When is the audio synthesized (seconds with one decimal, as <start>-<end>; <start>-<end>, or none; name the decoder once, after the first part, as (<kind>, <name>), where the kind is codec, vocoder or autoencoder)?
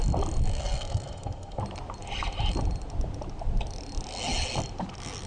0.5-1.6 (codec, SNAC)